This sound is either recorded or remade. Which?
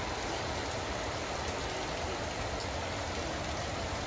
recorded